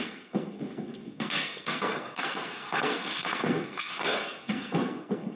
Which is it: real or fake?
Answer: fake